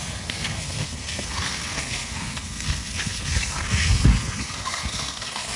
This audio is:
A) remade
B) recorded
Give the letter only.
A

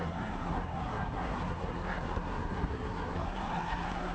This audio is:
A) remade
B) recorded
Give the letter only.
A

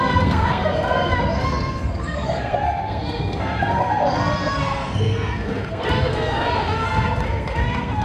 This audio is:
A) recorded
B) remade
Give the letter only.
B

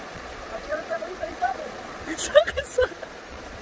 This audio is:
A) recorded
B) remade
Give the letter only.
B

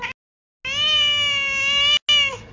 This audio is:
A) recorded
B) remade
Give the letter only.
A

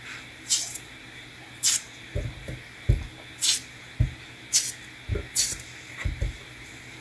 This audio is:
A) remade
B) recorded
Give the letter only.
B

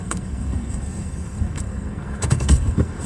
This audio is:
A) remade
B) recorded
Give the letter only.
A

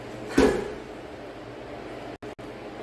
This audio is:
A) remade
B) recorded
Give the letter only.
B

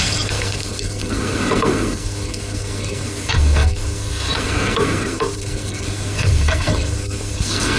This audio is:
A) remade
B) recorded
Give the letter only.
A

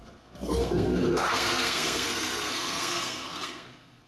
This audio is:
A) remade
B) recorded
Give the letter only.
A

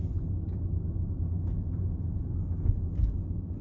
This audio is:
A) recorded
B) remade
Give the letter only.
A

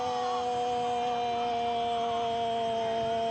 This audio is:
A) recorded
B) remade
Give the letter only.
A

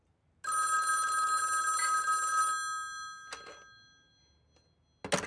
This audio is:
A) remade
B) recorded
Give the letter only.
B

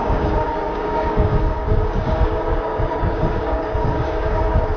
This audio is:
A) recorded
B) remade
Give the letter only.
B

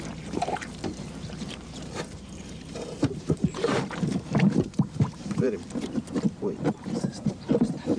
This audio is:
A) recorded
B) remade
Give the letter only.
B